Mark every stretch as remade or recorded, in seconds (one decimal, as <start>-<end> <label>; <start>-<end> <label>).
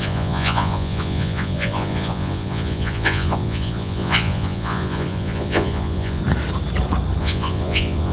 0.0-6.2 remade; 6.2-7.2 recorded; 7.2-8.1 remade